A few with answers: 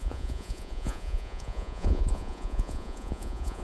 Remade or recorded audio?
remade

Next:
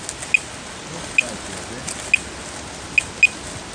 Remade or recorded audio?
recorded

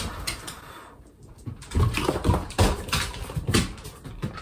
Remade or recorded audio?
recorded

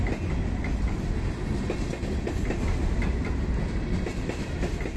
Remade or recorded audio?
recorded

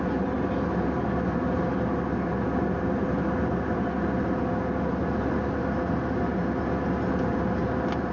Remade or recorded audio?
recorded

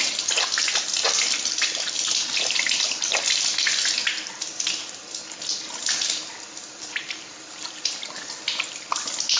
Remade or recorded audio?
recorded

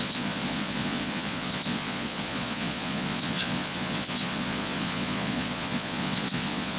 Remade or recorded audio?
remade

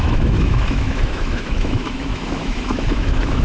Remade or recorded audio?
remade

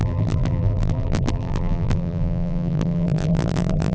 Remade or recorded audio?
remade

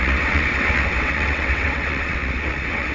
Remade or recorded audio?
remade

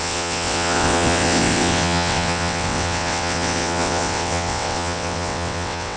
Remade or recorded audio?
remade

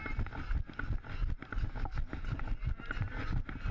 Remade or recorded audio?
recorded